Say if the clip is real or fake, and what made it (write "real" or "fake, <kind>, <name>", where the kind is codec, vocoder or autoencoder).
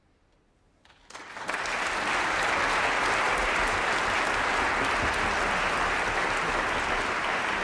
real